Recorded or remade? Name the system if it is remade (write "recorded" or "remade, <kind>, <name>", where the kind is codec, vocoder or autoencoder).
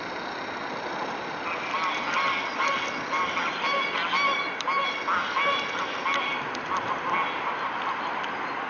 recorded